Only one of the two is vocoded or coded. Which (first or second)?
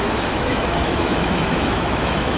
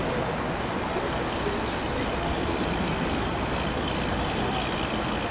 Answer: first